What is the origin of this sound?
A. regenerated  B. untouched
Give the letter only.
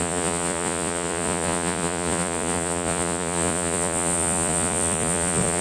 A